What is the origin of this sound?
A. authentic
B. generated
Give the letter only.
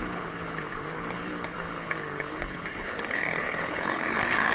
B